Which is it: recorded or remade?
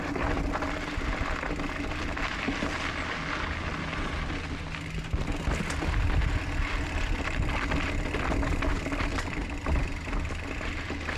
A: recorded